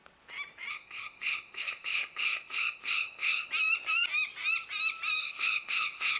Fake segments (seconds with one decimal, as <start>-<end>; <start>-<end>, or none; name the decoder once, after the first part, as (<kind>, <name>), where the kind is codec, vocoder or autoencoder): 0.7-3.5 (codec, ZipCodec); 5.2-6.2

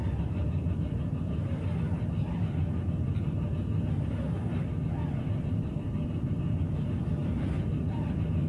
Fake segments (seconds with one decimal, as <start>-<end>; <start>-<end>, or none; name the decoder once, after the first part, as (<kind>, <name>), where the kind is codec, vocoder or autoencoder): none

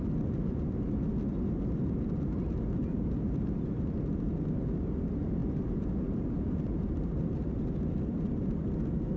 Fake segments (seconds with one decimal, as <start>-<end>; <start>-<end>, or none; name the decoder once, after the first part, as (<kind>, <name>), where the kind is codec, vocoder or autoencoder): 2.8-3.9 (vocoder, BigVGAN v2); 5.4-7.2

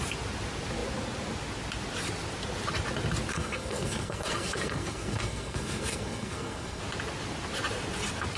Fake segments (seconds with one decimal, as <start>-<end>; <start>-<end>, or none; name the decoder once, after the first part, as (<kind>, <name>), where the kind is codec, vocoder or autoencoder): 3.3-6.8 (codec, SNAC)

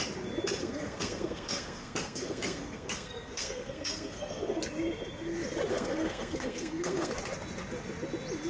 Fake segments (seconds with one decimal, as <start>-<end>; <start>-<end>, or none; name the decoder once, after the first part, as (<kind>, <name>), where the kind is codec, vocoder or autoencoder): 0.6-4.6 (codec, SNAC); 5.7-7.1

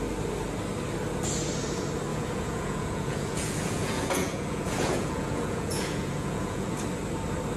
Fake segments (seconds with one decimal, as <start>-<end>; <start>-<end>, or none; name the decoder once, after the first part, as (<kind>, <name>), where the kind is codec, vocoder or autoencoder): 2.1-6.7 (vocoder, Vocos)